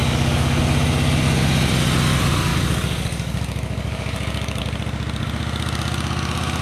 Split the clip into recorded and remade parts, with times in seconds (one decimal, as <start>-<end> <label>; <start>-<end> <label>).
0.0-0.6 remade; 0.6-2.5 recorded; 2.5-4.6 remade; 4.6-6.6 recorded